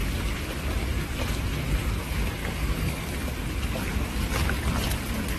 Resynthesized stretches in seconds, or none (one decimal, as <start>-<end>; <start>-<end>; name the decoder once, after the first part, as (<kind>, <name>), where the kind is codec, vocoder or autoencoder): 2.4-3.1 (codec, DAC)